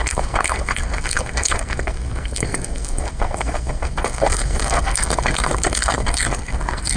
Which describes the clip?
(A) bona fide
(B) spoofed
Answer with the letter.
B